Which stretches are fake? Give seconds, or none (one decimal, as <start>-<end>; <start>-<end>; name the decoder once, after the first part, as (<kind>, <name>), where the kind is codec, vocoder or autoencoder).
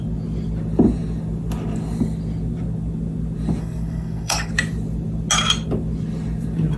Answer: 3.6-4.5 (codec, SNAC)